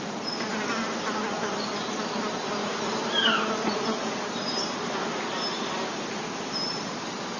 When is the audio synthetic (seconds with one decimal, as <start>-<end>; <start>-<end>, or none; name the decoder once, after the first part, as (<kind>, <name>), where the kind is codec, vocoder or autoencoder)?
0.5-1.7 (vocoder, BigVGAN v2); 2.6-7.0